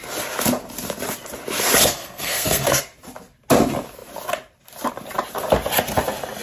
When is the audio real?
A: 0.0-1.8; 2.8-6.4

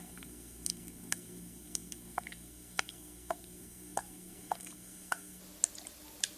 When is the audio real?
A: 5.4-6.4

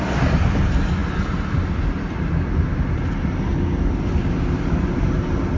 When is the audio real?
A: 0.0-5.6

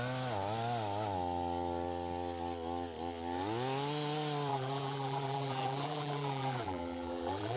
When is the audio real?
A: 0.0-4.5

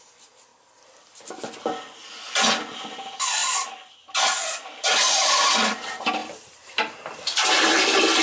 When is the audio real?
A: 0.5-2.8